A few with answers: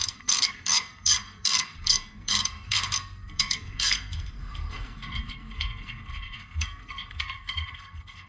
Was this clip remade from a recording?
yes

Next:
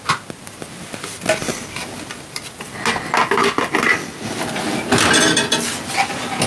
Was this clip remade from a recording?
no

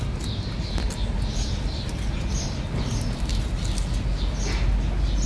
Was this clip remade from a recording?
no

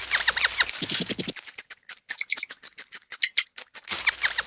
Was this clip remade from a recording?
no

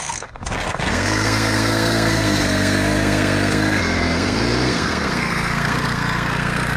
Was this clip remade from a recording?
yes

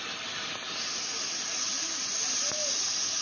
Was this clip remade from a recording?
no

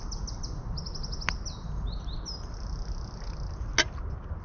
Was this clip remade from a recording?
no